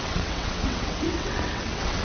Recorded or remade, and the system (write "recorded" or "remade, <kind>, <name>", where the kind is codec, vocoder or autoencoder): remade, vocoder, WaveNeXt